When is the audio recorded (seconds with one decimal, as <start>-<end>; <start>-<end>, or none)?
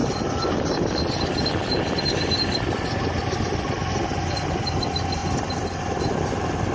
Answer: 0.0-6.7